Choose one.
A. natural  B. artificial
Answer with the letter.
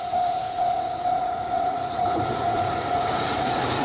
B